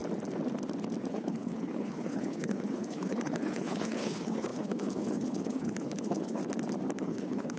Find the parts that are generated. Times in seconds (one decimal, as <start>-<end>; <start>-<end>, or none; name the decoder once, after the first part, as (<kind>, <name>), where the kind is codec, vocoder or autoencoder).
1.1-6.4 (codec, HILCodec); 7.0-7.6